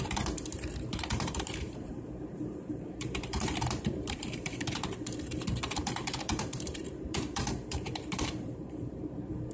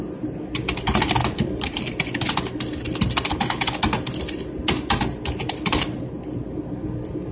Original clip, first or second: second